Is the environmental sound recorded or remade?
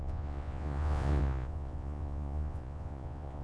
remade